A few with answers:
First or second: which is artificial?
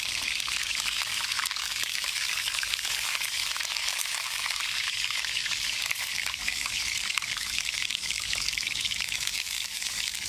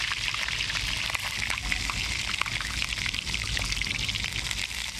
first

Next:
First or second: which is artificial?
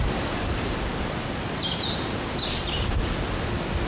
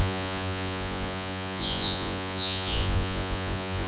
second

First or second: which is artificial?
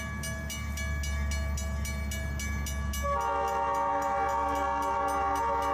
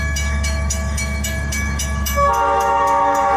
second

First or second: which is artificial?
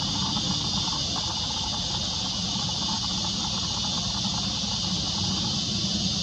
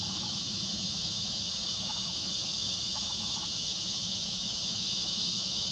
second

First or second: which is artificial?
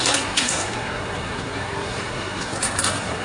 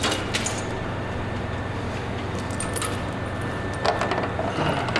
first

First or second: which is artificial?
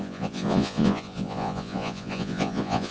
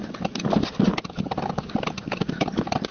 first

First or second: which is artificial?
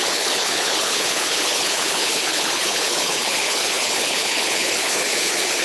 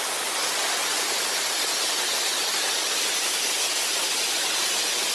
first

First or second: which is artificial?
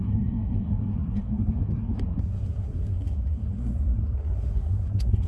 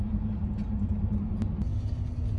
first